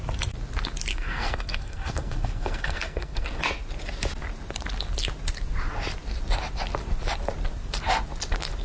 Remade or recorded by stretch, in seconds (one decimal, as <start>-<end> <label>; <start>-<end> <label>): 0.0-0.9 recorded; 0.9-3.4 remade; 3.4-8.6 recorded